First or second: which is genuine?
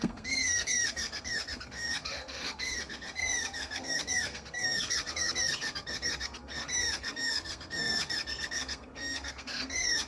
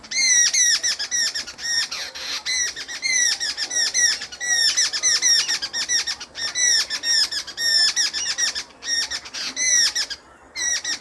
second